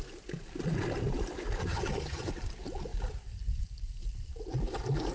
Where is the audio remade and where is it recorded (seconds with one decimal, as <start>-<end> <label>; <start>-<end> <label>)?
0.0-1.6 recorded; 1.6-2.3 remade; 2.3-5.1 recorded